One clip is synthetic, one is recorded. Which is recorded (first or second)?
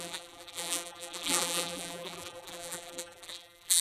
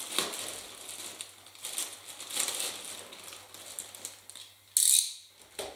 second